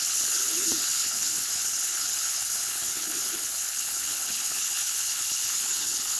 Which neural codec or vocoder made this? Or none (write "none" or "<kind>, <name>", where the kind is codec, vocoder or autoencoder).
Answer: codec, HILCodec